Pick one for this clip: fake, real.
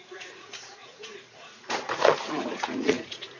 fake